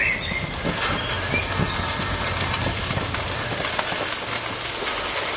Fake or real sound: real